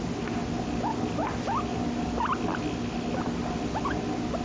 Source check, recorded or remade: recorded